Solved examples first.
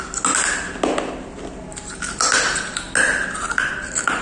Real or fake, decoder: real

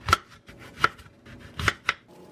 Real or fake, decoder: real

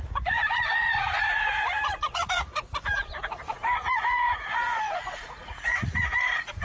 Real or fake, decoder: fake, vocoder, Vocos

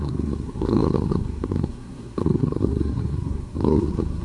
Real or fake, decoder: fake, codec, SNAC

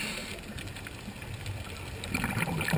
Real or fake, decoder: real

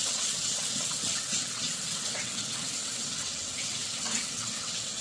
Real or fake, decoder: fake, vocoder, WaveNeXt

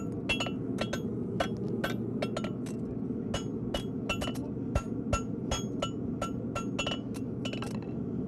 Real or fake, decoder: real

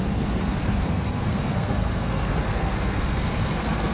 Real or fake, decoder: fake, codec, SNAC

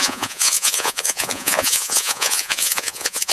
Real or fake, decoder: fake, vocoder, Vocos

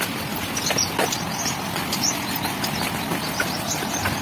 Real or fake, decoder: real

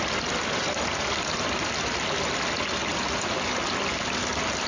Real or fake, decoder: real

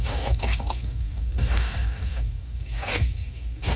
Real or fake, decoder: fake, codec, DAC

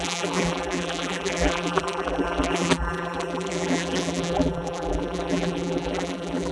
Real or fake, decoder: fake, vocoder, BigVGAN v2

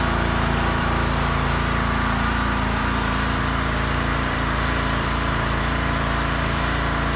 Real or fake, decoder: fake, vocoder, BigVGAN v2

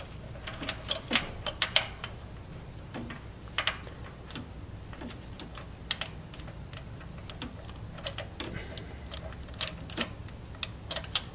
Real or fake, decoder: real